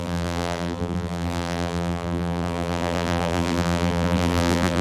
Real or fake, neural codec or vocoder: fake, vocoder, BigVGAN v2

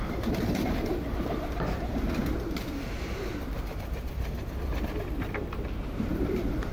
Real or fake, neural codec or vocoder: fake, vocoder, BigVGAN v2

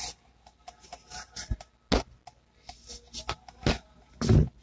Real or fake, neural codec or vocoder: real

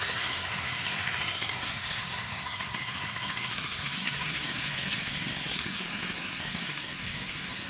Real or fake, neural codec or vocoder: fake, codec, SNAC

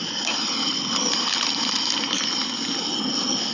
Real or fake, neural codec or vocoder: real